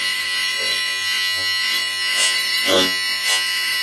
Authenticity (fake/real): fake